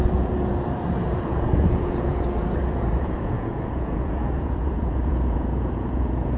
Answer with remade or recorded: remade